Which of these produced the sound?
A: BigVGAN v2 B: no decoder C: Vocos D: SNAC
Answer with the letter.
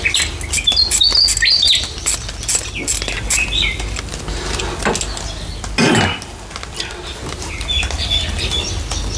B